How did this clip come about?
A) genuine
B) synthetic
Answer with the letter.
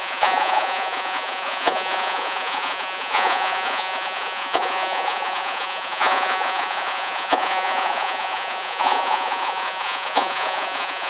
B